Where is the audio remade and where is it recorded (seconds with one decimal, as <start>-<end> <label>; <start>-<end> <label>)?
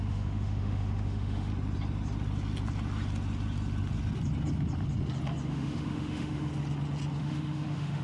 0.0-1.5 remade; 1.5-5.5 recorded; 5.5-6.5 remade; 6.5-7.2 recorded; 7.2-8.0 remade